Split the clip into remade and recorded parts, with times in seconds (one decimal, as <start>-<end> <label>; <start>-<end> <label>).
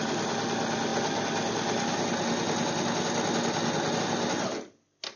0.0-5.2 recorded